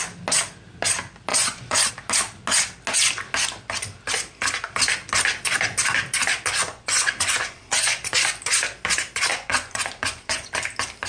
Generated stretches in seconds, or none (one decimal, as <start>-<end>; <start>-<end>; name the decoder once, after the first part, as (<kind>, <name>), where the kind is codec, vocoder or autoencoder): 1.3-1.9 (vocoder, Vocos); 6.6-8.2; 9.3-10.5